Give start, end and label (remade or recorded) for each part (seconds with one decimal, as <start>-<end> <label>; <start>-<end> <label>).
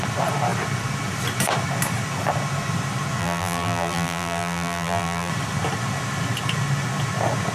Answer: 0.0-3.2 recorded; 3.2-5.3 remade; 5.3-7.5 recorded